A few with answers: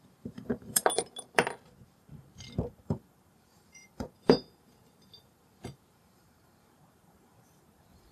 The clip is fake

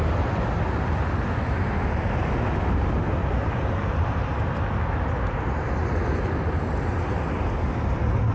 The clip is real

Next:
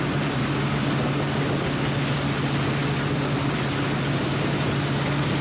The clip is real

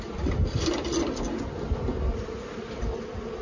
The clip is real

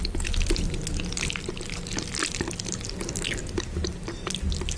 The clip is real